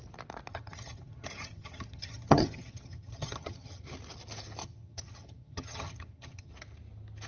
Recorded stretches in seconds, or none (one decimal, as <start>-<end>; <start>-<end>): 0.0-0.5; 3.8-4.6; 6.5-7.3